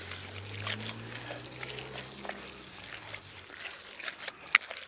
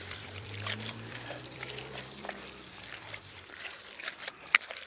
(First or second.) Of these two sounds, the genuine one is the first